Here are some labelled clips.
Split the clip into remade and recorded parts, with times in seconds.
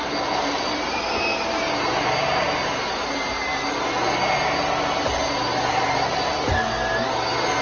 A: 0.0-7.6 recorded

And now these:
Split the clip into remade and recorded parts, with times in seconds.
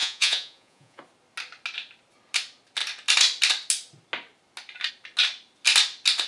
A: 0.0-1.0 remade; 1.0-6.3 recorded